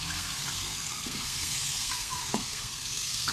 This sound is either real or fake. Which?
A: fake